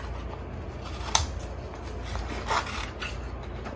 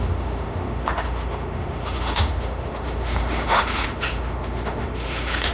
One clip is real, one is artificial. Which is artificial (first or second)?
second